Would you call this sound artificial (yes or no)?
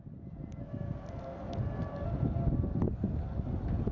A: no